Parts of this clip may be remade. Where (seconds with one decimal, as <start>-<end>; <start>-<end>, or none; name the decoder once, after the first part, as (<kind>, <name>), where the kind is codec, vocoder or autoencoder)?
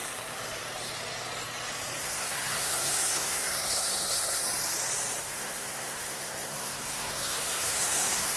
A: 2.0-4.4 (codec, SNAC); 5.2-8.4